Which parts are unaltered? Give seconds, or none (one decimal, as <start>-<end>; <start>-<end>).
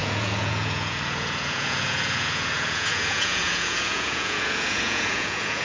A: none